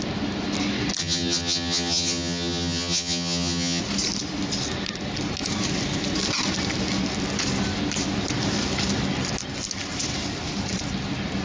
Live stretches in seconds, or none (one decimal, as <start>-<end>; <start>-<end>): 0.0-1.0; 3.8-11.4